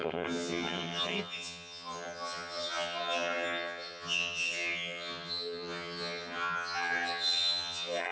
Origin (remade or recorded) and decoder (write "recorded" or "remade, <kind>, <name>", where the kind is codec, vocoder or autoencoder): remade, vocoder, HiFi-GAN